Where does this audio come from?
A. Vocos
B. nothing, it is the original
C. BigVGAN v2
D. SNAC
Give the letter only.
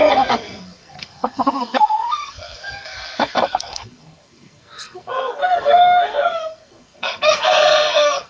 D